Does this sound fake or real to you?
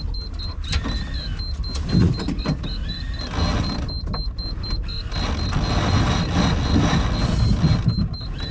real